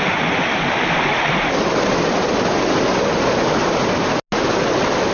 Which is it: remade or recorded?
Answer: recorded